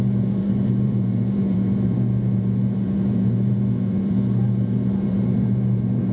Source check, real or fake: fake